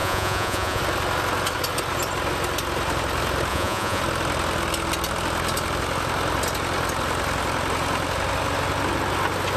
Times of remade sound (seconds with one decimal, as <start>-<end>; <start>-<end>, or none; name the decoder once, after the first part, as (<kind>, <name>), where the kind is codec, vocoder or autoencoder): 0.0-0.8 (vocoder, Vocos); 3.5-4.0